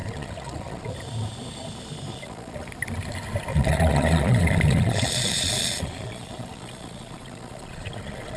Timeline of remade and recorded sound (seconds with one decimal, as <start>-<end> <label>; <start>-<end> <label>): 0.0-0.9 remade; 0.9-2.1 recorded; 2.1-2.7 remade; 2.7-3.5 recorded; 3.5-8.4 remade